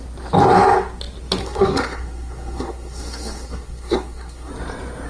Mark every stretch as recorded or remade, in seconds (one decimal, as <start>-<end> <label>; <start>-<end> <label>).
0.0-1.4 recorded; 1.4-4.5 remade; 4.5-5.1 recorded